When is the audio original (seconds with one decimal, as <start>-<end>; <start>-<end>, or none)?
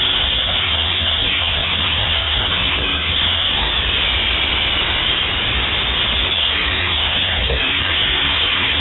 3.7-6.3